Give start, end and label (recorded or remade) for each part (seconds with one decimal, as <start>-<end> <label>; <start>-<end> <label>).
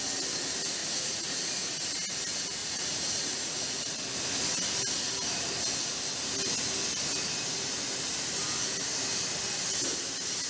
0.0-0.8 recorded; 0.8-1.7 remade; 1.7-2.6 recorded; 2.6-4.0 remade; 4.0-10.5 recorded